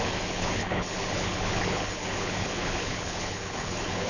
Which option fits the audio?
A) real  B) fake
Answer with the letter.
B